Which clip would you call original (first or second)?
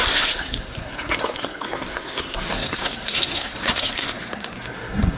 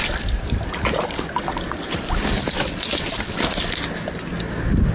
second